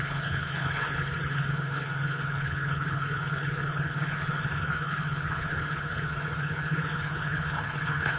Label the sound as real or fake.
fake